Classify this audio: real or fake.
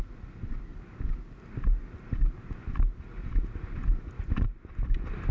real